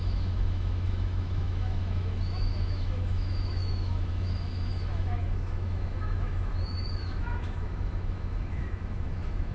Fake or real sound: fake